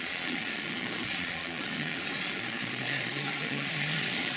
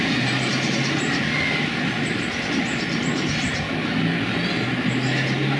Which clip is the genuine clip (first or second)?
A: second